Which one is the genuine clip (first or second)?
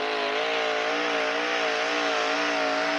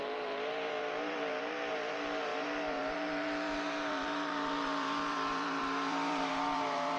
first